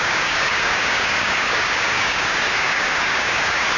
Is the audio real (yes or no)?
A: no